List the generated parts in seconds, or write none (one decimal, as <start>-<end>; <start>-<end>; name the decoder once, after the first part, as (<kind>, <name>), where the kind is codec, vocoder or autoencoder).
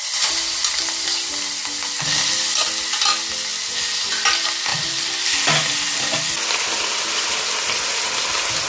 4.7-5.5 (vocoder, BigVGAN v2)